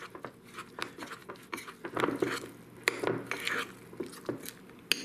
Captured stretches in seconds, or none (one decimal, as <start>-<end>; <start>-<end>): 0.0-5.0